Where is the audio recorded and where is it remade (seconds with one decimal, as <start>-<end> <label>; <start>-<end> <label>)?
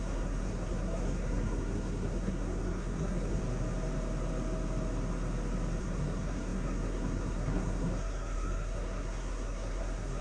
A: 0.0-3.4 remade; 3.4-5.8 recorded; 5.8-10.2 remade